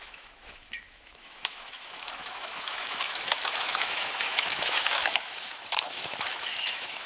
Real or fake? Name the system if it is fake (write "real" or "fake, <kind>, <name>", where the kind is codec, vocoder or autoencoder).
fake, autoencoder, DAC-VAE